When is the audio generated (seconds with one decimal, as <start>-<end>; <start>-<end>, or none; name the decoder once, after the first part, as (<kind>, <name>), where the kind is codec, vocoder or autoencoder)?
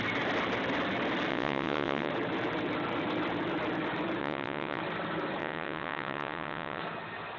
1.3-2.1 (vocoder, WaveNeXt); 4.2-4.8; 5.4-6.8